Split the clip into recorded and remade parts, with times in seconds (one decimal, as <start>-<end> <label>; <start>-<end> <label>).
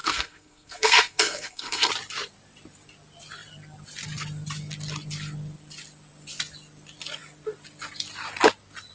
0.0-1.9 remade; 1.9-8.9 recorded